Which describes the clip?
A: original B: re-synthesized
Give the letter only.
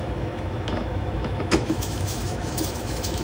B